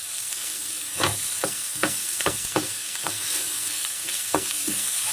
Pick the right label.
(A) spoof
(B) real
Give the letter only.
A